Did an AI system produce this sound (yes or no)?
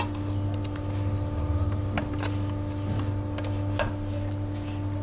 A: no